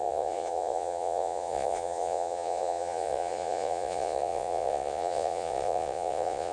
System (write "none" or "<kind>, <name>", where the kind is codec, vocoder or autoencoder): vocoder, Vocos